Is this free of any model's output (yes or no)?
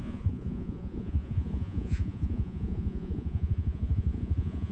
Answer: no